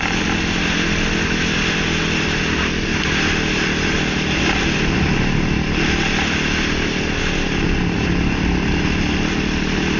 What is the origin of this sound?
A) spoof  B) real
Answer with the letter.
B